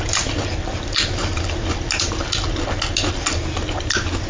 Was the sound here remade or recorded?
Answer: recorded